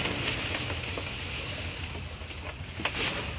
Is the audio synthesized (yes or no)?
no